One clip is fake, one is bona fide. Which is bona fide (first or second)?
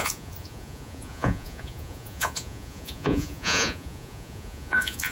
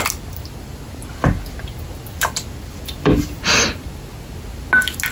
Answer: second